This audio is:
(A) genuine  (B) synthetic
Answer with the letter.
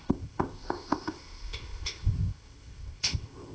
B